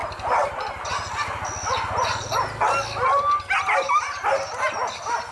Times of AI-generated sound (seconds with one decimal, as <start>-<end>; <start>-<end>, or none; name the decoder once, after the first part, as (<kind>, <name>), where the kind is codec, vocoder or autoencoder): none